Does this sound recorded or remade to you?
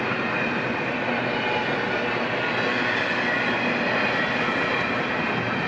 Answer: recorded